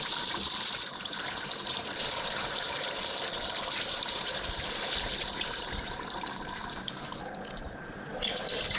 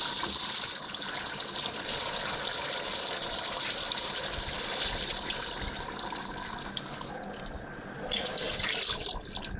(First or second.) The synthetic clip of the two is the first